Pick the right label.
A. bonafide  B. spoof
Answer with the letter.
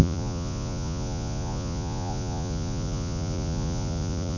B